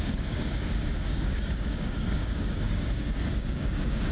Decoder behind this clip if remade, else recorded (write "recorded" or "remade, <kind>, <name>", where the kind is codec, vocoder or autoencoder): remade, codec, DAC